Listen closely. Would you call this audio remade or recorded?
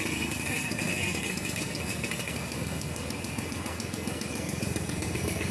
remade